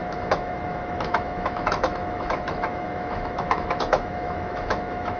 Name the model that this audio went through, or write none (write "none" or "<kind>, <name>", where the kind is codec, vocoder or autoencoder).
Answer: autoencoder, DAC-VAE